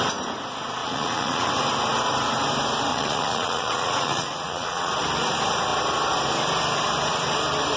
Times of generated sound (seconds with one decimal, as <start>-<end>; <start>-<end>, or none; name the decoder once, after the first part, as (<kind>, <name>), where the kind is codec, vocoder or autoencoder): 0.8-1.5 (vocoder, Vocos); 2.9-4.9